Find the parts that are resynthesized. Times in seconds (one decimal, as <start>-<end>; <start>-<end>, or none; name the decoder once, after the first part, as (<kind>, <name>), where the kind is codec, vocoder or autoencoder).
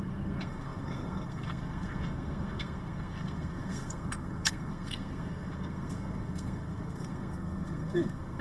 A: 0.0-8.4 (codec, SNAC)